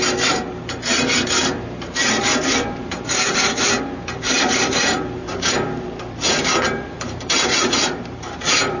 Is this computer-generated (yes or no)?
yes